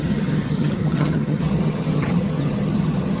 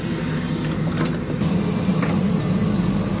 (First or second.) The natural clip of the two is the second